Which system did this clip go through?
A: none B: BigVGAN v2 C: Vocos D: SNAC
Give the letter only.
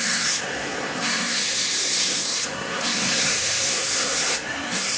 D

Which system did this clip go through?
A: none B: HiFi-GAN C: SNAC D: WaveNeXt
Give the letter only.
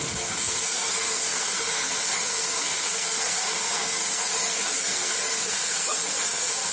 C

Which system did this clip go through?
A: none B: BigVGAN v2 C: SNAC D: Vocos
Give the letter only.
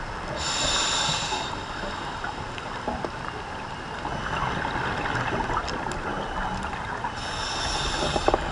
A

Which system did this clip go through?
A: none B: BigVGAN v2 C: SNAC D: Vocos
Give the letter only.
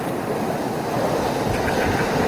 A